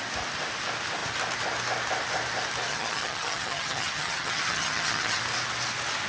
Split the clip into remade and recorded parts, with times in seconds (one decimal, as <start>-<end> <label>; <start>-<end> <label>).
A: 0.0-2.7 recorded; 2.7-5.2 remade; 5.2-6.1 recorded